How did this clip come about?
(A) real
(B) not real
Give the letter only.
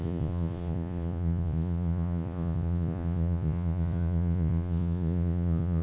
B